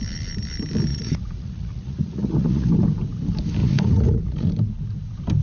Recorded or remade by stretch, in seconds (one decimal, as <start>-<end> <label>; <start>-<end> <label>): 0.0-0.9 recorded; 0.9-2.7 remade; 2.7-3.6 recorded; 3.6-4.5 remade; 4.5-5.4 recorded